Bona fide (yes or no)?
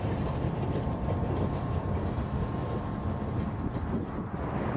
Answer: yes